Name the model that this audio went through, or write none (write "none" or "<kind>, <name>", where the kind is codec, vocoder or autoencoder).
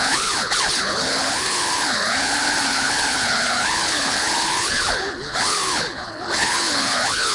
codec, HILCodec